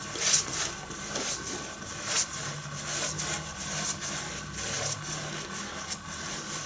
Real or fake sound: real